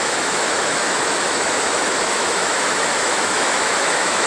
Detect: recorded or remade remade